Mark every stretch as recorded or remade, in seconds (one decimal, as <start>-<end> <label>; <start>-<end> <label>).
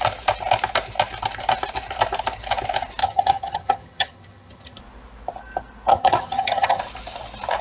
0.0-3.0 recorded; 3.0-4.8 remade; 4.8-5.9 recorded; 5.9-6.8 remade; 6.8-7.6 recorded